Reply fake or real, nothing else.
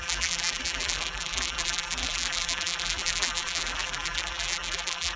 fake